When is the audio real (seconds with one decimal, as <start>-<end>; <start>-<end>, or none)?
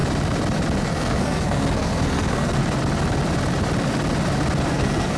0.0-0.8; 2.6-4.7